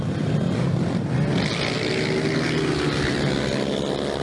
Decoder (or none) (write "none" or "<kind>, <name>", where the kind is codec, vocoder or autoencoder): none